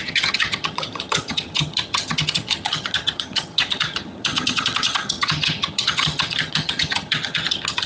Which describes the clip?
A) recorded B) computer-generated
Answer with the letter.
B